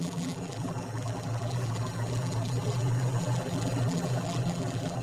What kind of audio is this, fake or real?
fake